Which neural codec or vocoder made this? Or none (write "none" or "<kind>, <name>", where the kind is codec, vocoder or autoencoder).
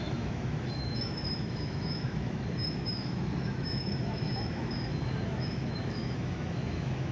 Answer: autoencoder, DAC-VAE